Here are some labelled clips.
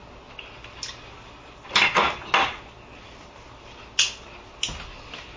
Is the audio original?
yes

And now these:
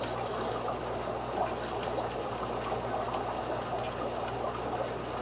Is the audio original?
yes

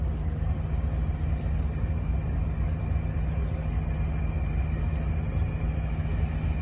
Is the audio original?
yes